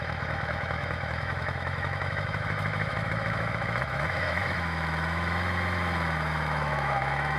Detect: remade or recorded remade